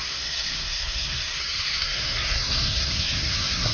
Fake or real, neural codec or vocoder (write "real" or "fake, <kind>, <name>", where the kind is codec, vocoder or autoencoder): fake, codec, SNAC